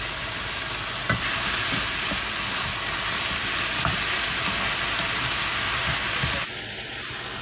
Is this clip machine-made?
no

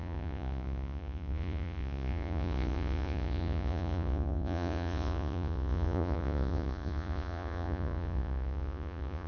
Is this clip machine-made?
yes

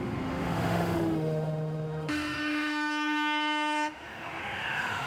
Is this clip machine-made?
yes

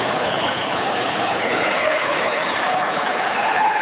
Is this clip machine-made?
yes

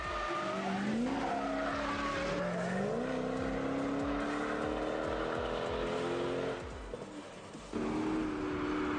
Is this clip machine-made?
no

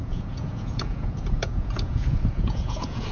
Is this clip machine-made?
yes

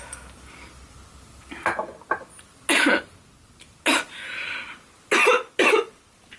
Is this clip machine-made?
no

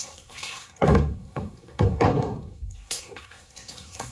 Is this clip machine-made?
yes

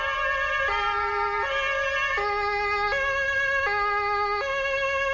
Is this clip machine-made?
no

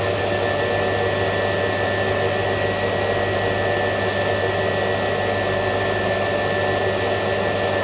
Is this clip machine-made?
no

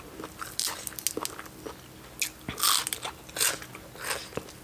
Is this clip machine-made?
no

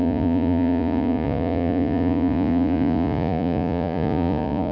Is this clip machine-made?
yes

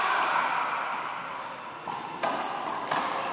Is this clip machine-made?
no